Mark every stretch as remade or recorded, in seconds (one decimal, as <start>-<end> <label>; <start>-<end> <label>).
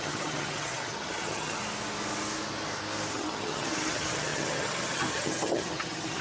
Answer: 0.0-1.6 remade; 1.6-3.1 recorded; 3.1-6.2 remade